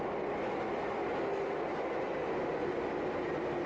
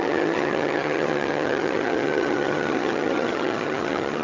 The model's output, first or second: second